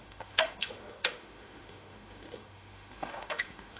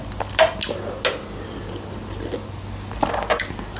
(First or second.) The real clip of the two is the second